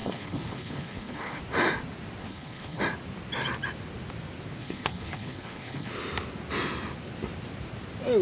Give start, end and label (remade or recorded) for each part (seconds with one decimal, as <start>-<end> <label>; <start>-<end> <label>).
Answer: 0.0-1.4 remade; 1.4-2.2 recorded; 2.2-2.8 remade; 2.8-4.6 recorded; 4.6-5.9 remade; 5.9-8.2 recorded